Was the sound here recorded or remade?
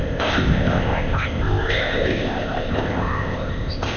remade